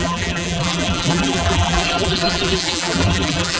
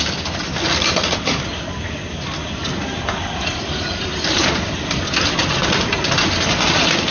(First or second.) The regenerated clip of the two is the first